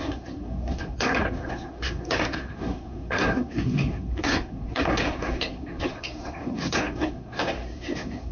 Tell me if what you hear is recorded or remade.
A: remade